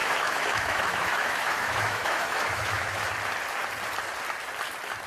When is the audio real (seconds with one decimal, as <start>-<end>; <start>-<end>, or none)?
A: 3.1-5.1